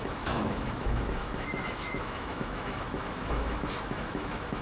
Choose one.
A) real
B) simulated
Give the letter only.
B